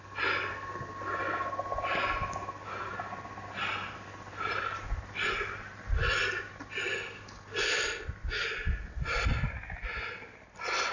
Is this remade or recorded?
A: recorded